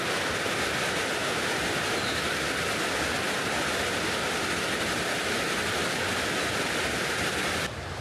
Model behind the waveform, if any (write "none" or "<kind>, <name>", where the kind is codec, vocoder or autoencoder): none